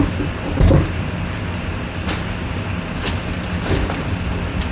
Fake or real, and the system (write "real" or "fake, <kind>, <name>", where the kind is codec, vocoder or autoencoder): real